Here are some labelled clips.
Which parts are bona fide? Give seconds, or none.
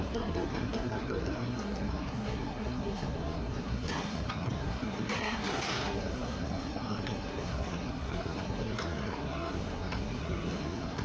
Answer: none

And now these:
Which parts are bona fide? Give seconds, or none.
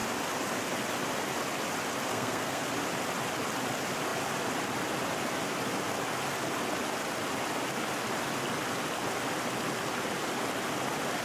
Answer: 0.0-2.1; 2.7-11.2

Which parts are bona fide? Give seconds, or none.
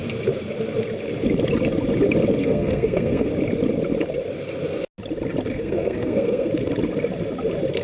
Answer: 0.0-2.4; 3.3-5.5; 6.5-7.8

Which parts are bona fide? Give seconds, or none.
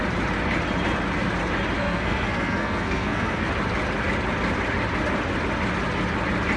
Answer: 0.0-1.8; 3.5-6.6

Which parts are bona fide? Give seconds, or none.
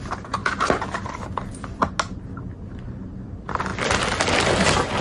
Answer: 0.0-5.0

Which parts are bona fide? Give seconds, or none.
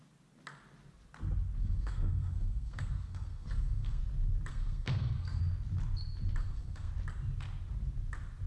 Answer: 0.0-1.6; 4.0-4.5; 5.4-6.4; 6.9-8.5